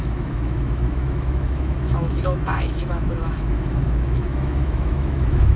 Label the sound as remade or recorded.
remade